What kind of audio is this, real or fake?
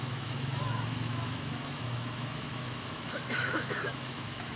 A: fake